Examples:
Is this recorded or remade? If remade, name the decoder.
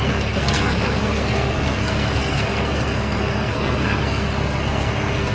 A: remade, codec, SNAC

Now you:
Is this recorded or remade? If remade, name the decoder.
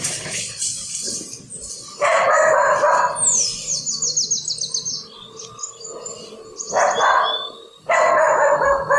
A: recorded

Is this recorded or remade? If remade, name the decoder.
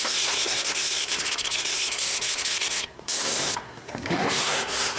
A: remade, codec, SNAC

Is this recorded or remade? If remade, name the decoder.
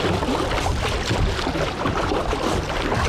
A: recorded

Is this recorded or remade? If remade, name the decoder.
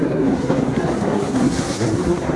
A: remade, codec, SNAC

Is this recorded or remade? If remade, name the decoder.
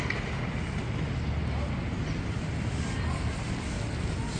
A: recorded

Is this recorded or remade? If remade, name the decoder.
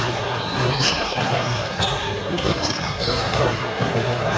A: remade, codec, SNAC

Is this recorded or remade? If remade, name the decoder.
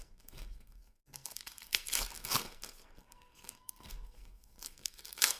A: remade, codec, SNAC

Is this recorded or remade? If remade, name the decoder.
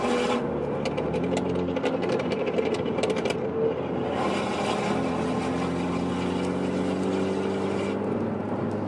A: recorded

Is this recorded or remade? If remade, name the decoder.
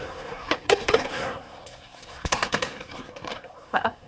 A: remade, codec, SNAC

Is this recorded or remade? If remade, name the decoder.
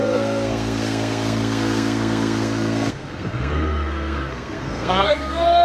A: remade, codec, SNAC